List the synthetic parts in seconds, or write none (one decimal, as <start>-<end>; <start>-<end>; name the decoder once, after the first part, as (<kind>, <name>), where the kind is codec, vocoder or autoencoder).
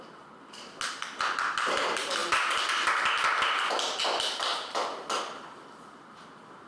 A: none